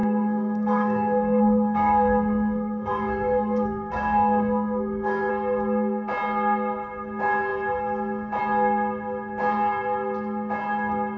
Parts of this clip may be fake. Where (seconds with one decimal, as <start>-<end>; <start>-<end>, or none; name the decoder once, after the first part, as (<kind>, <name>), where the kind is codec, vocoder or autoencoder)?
0.0-5.3 (codec, SNAC)